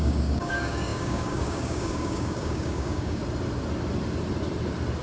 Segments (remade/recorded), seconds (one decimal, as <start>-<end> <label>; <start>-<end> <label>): 0.0-3.2 remade; 3.2-5.0 recorded